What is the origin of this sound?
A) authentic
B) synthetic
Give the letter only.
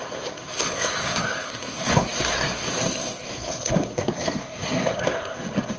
B